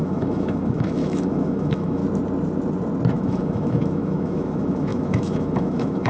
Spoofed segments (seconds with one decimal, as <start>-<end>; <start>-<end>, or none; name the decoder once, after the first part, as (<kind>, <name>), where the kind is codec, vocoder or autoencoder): 0.0-2.0 (autoencoder, DAC-VAE); 3.1-6.1